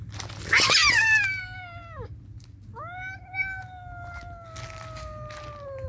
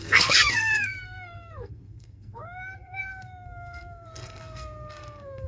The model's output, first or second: second